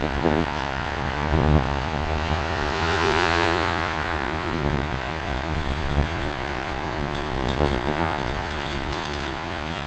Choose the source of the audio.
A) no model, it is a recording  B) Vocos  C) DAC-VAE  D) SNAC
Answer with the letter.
B